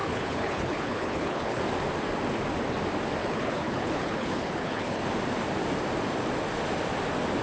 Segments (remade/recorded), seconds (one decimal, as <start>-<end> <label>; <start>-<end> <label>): 0.0-1.6 remade; 1.6-3.2 recorded; 3.2-5.0 remade; 5.0-7.4 recorded